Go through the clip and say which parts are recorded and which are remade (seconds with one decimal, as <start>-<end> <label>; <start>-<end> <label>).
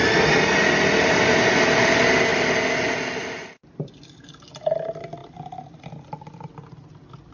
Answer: 0.0-7.3 recorded